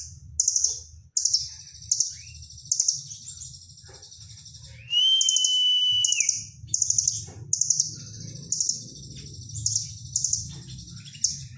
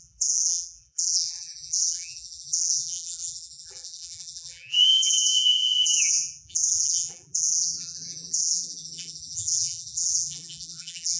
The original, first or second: first